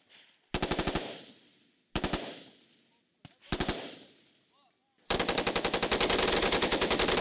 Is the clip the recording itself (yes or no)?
yes